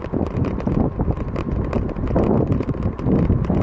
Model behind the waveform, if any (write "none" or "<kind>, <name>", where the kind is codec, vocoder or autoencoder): none